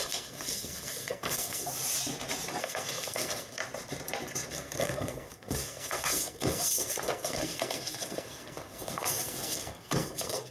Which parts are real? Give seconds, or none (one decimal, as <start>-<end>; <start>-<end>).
1.7-2.6; 3.6-4.5